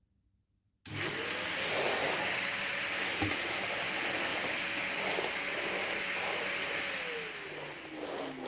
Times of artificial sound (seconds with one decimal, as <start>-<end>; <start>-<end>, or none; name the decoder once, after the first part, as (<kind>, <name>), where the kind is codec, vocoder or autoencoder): 2.0-2.6 (codec, DAC)